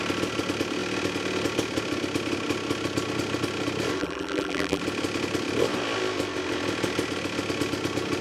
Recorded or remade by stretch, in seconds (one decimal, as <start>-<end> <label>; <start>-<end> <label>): 0.0-4.0 recorded; 4.0-4.8 remade; 4.8-8.2 recorded